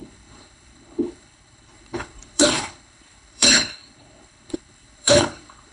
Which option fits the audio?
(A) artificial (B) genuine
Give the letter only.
A